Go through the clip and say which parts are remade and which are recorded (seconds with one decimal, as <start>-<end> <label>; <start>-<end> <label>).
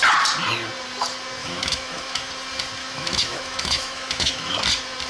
0.0-1.4 recorded; 1.4-2.3 remade; 2.3-2.8 recorded; 2.8-4.6 remade; 4.6-5.1 recorded